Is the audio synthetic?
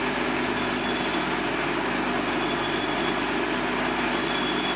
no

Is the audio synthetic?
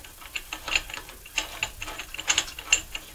no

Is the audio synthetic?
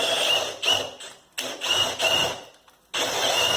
no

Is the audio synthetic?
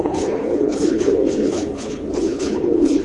yes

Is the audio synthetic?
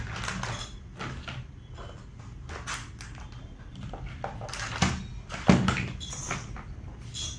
no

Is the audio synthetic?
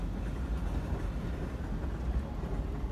no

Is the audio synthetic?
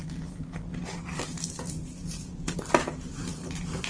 no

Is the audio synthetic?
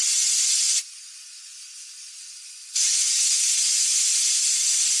no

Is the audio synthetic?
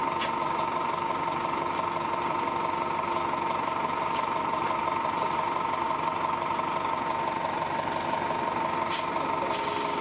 yes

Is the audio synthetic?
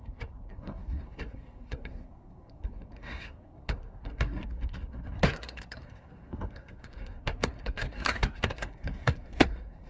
yes